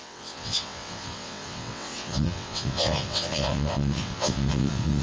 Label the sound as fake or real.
fake